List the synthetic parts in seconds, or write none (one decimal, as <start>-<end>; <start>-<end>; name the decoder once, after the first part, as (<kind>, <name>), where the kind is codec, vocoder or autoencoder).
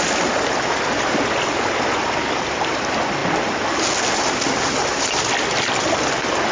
none